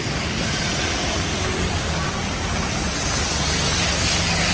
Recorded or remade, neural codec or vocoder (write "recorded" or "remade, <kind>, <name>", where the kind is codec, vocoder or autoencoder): recorded